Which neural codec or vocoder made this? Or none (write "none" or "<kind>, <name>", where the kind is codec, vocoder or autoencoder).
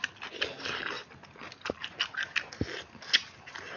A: none